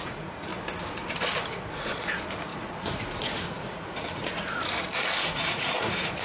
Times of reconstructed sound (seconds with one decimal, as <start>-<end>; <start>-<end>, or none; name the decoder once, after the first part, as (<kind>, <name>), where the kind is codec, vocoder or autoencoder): 0.0-0.5 (vocoder, Vocos); 1.1-6.2